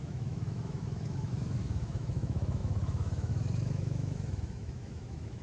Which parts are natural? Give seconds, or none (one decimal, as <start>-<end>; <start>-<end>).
none